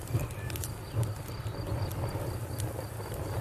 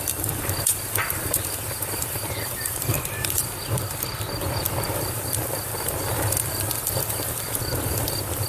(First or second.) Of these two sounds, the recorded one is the first